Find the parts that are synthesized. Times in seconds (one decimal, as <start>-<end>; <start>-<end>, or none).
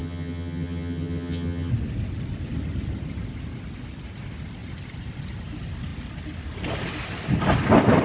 0.0-1.7